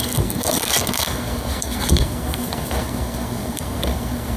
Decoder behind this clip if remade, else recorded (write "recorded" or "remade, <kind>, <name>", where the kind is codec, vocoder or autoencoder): remade, codec, SNAC